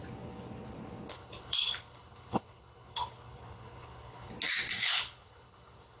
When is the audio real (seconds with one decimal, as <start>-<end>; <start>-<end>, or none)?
0.0-1.1; 4.3-4.8